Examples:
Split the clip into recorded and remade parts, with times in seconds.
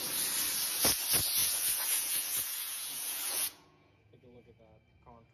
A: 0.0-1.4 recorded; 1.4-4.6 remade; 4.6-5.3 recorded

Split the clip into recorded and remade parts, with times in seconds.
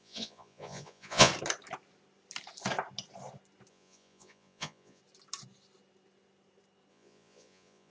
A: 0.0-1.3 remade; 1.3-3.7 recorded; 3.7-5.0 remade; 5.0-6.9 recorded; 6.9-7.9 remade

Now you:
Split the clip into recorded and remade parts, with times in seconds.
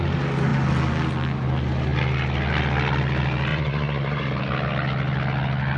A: 0.0-3.5 recorded; 3.5-4.3 remade; 4.3-5.8 recorded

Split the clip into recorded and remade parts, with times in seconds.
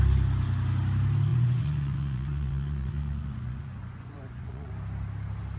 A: 0.0-1.3 recorded; 1.3-4.7 remade; 4.7-5.6 recorded